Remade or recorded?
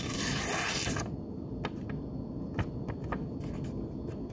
recorded